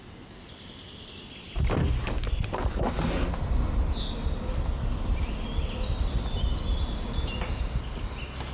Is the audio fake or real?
real